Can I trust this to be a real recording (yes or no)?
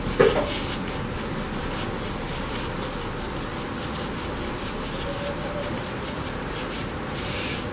yes